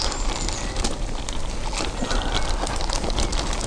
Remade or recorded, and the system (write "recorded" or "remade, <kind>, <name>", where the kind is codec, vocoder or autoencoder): recorded